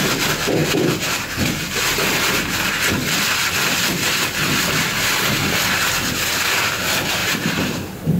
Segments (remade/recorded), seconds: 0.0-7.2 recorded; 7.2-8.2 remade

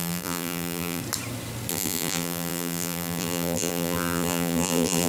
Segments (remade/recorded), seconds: 0.0-1.0 remade; 1.0-1.7 recorded; 1.7-5.1 remade

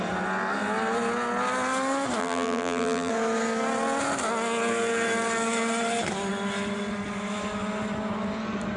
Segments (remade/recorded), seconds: 0.0-2.2 recorded; 2.2-3.1 remade; 3.1-8.8 recorded

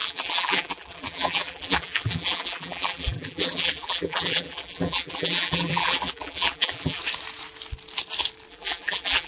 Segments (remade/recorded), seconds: 0.0-7.0 remade; 7.0-8.5 recorded; 8.5-9.3 remade

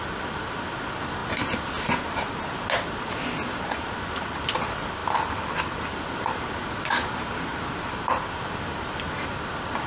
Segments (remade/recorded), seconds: 0.0-9.9 recorded

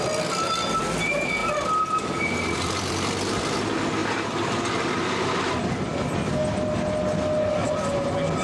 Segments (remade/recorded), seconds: 0.0-1.4 recorded; 1.4-3.6 remade; 3.6-4.0 recorded; 4.0-5.5 remade; 5.5-8.4 recorded

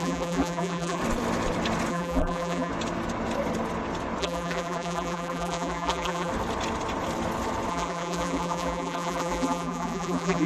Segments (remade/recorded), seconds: 0.0-1.0 remade; 1.0-1.9 recorded; 1.9-2.7 remade; 2.7-4.2 recorded; 4.2-6.3 remade; 6.3-7.7 recorded; 7.7-10.5 remade